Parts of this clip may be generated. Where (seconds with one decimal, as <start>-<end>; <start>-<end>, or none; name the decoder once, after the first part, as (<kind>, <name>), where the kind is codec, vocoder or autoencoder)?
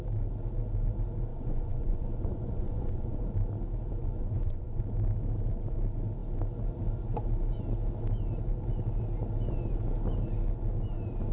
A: 1.3-3.2 (vocoder, Vocos); 4.0-4.8